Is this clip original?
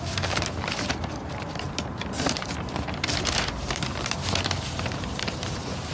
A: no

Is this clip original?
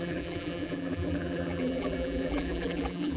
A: no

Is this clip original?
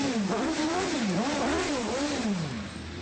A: no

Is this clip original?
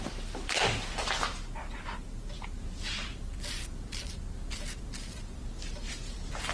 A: no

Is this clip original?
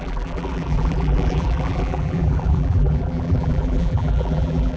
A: no